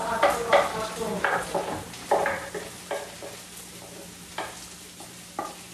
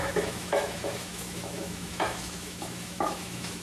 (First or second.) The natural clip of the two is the first